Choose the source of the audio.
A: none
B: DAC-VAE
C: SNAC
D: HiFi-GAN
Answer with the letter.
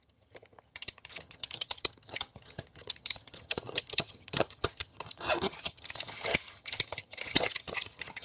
D